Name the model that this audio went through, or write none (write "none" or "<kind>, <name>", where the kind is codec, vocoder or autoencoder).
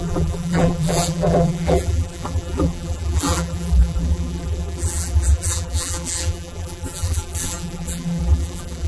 vocoder, BigVGAN v2